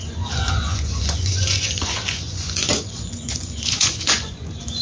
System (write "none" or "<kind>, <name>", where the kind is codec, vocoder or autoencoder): vocoder, Vocos